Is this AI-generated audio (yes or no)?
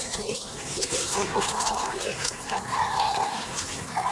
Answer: yes